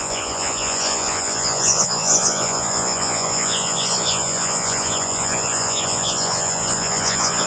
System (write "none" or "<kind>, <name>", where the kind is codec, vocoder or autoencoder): vocoder, Vocos